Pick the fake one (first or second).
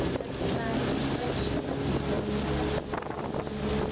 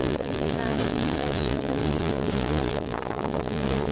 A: second